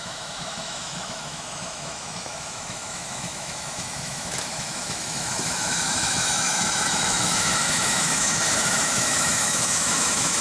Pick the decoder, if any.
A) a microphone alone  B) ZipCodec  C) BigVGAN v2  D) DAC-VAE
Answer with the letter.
D